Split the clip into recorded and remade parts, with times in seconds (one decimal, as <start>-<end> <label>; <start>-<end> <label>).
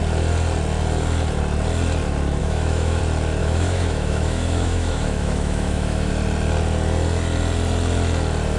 0.0-2.4 recorded; 2.4-3.0 remade; 3.0-3.4 recorded; 3.4-6.1 remade; 6.1-8.6 recorded